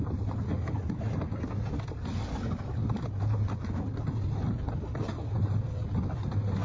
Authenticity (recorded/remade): recorded